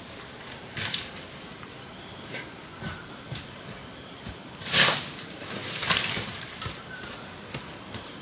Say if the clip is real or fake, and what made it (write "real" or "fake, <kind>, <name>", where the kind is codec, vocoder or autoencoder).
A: fake, vocoder, BigVGAN v2